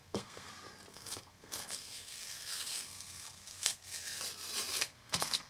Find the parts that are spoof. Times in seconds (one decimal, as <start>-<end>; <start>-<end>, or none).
0.0-0.5; 0.9-4.2; 4.7-5.5